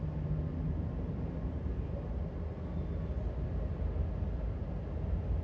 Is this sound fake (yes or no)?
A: no